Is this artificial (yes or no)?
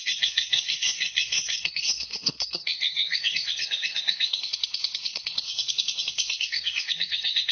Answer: yes